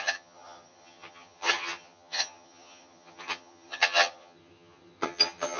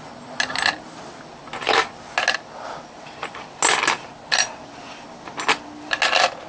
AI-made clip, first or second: first